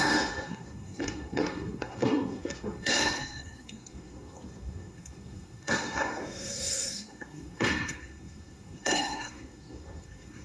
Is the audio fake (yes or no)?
yes